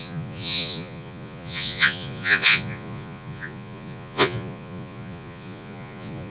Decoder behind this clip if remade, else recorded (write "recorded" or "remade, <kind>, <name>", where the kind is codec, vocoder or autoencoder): remade, vocoder, Vocos